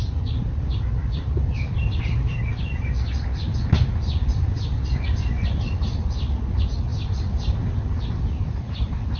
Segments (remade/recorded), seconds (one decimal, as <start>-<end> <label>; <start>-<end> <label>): 0.0-9.2 recorded